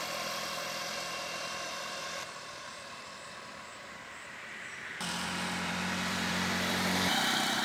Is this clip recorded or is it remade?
remade